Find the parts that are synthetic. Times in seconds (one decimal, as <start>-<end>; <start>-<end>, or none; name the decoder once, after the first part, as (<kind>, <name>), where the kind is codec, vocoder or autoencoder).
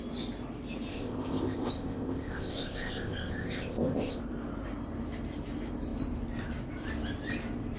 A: 0.9-4.2 (codec, ZipCodec)